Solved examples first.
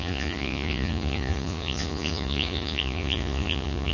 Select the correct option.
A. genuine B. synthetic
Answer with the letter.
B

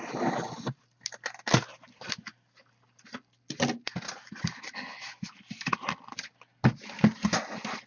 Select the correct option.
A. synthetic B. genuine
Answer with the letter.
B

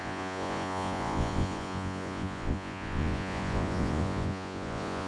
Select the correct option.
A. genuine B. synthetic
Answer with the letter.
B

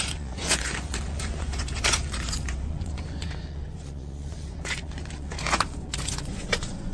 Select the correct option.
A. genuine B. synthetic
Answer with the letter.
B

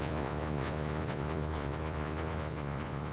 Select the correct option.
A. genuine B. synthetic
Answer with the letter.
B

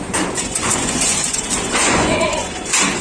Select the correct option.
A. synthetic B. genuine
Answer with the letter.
A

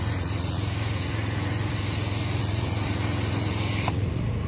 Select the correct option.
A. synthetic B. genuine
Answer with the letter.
A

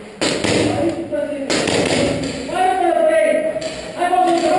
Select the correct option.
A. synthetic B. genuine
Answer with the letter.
B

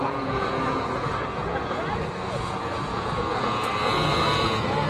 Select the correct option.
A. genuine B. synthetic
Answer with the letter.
B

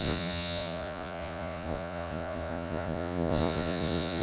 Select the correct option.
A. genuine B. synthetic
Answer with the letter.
B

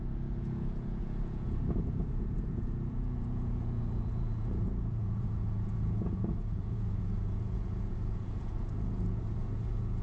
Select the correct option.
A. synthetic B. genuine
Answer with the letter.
A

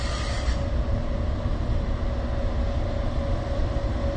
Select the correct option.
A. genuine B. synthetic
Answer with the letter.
A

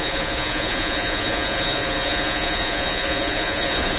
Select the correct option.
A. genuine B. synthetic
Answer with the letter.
B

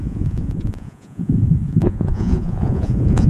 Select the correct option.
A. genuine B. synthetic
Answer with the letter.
B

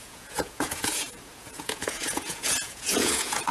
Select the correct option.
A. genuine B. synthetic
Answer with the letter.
B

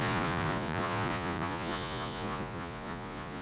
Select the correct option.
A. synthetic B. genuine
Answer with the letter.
A